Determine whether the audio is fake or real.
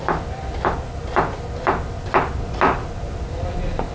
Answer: real